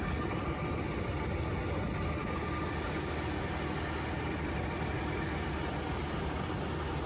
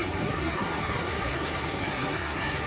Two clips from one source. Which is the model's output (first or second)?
second